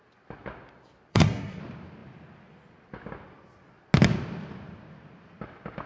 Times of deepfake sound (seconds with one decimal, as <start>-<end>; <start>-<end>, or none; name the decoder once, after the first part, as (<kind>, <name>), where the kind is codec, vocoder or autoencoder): 1.1-1.6 (codec, SNAC)

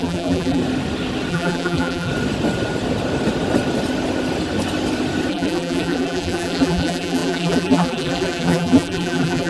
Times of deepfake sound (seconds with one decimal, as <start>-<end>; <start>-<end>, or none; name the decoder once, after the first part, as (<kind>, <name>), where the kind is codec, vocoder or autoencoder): 0.0-0.6 (vocoder, BigVGAN v2); 1.3-2.1; 5.3-9.5

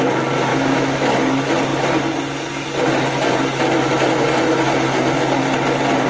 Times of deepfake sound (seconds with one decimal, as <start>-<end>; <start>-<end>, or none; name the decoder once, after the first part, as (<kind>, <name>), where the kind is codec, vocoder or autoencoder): 0.5-1.2 (autoencoder, DAC-VAE)

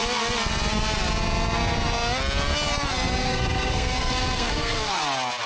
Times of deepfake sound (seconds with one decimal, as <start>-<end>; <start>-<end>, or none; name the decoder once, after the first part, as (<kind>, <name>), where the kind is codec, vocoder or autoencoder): 3.2-5.0 (codec, SNAC)

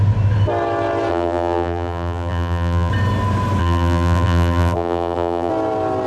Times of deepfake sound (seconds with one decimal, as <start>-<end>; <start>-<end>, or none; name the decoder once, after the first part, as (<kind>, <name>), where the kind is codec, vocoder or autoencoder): 1.1-2.9 (vocoder, BigVGAN v2); 3.6-5.5